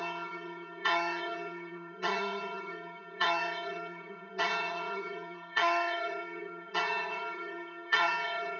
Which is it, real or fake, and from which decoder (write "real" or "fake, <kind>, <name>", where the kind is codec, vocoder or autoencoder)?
fake, vocoder, HiFi-GAN